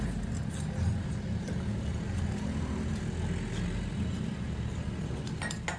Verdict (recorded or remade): recorded